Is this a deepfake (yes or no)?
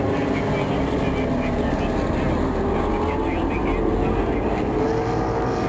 no